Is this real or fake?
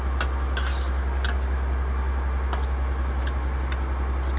real